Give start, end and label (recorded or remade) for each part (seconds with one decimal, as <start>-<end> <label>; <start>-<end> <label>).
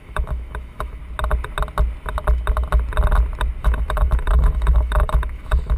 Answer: 0.0-1.0 remade; 1.0-3.6 recorded; 3.6-5.8 remade